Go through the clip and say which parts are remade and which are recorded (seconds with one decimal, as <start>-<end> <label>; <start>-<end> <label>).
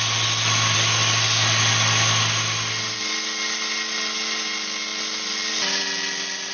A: 0.0-6.5 recorded